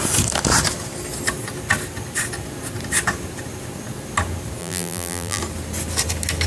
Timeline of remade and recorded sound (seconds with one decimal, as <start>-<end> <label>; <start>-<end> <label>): 0.0-4.6 recorded; 4.6-5.4 remade; 5.4-6.5 recorded